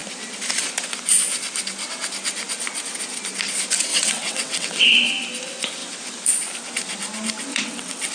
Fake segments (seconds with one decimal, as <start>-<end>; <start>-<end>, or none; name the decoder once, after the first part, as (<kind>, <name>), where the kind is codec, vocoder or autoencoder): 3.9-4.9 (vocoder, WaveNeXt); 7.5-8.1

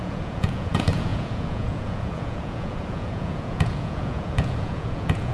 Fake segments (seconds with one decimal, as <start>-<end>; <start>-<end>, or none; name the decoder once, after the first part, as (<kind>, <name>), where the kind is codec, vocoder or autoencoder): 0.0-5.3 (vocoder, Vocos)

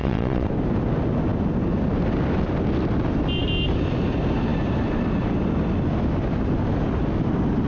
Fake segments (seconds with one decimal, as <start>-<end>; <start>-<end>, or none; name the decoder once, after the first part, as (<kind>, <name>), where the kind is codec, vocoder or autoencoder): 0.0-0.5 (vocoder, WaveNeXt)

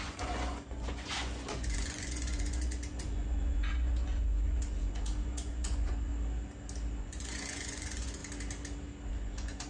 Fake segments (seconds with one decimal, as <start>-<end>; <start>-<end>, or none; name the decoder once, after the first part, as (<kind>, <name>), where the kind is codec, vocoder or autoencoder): 0.0-6.1 (vocoder, Vocos); 7.0-8.2; 9.1-9.7

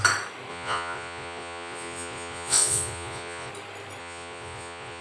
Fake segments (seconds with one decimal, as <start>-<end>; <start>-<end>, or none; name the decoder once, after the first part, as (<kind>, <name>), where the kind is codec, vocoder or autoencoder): 0.5-3.5 (vocoder, Vocos); 4.0-5.0

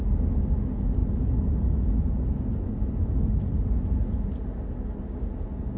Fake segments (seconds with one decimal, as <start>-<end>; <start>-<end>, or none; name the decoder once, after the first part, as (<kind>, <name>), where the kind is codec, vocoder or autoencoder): none

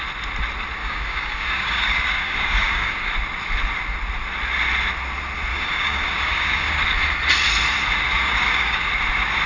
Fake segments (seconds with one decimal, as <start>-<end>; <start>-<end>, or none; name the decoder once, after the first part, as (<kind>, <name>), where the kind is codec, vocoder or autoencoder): 0.8-3.1 (codec, DAC); 5.5-6.8; 8.1-8.9

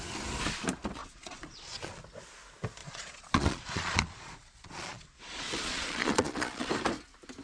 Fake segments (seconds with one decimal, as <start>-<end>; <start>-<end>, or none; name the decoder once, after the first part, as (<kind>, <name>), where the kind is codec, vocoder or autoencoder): 1.0-2.0 (vocoder, Vocos); 2.8-6.7